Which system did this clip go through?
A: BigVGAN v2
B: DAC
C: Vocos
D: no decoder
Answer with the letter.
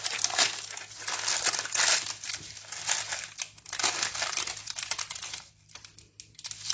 D